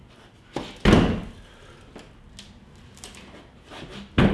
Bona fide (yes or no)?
yes